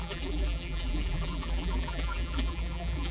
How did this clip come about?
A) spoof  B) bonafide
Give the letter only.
A